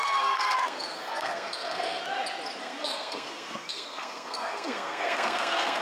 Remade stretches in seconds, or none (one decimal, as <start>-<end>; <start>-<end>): 0.0-2.0; 2.6-5.8